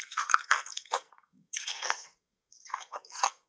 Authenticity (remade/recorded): remade